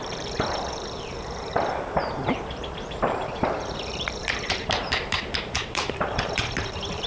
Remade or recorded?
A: remade